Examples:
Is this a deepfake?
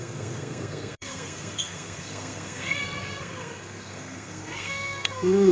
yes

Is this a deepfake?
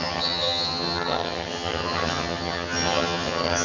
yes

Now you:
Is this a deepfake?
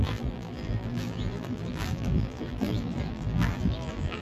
yes